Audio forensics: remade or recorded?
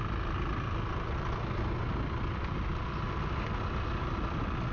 recorded